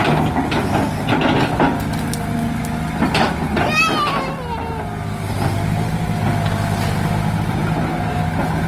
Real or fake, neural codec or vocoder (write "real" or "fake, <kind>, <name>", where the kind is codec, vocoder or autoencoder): real